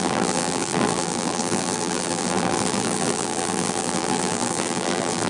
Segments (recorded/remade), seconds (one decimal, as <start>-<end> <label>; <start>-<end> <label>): 0.0-5.3 remade

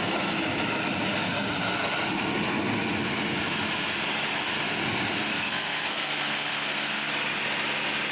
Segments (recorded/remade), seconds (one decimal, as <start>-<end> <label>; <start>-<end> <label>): 0.0-5.3 recorded; 5.3-7.1 remade; 7.1-8.1 recorded

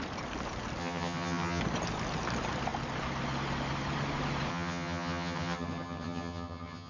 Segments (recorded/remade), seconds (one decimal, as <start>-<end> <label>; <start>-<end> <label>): 0.0-0.8 recorded; 0.8-1.6 remade; 1.6-4.5 recorded; 4.5-6.9 remade

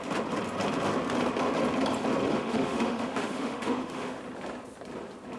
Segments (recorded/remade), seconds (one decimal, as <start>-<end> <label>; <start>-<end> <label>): 0.0-2.3 recorded; 2.3-4.2 remade; 4.2-5.4 recorded